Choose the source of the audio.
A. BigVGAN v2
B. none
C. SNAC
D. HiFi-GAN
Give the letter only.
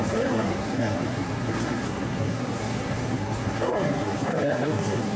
C